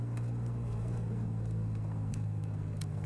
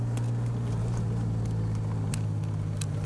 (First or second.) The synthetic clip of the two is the first